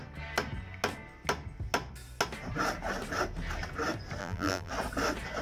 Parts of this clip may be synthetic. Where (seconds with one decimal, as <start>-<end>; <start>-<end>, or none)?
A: 4.2-4.7